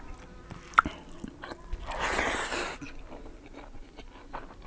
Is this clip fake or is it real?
real